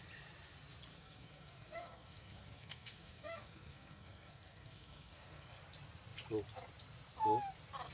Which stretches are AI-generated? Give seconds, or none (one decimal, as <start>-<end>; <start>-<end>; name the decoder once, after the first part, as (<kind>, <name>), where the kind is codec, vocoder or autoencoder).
0.9-5.6 (codec, SNAC)